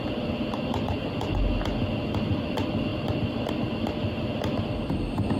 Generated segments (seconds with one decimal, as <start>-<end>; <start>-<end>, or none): 2.9-3.5